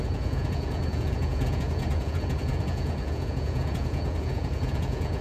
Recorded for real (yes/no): no